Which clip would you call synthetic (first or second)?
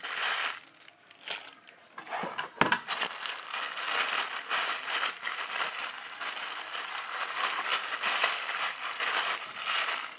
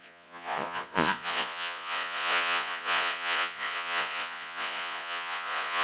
second